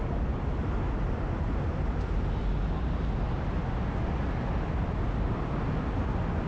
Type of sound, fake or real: real